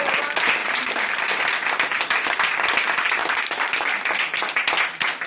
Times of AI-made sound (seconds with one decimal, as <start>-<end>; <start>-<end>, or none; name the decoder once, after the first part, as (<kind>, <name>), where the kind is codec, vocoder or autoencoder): 0.6-1.4 (vocoder, BigVGAN v2); 3.2-4.5